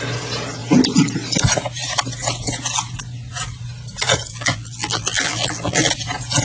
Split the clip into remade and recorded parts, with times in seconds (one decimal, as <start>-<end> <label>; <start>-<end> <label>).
0.0-4.3 recorded; 4.3-5.9 remade; 5.9-6.4 recorded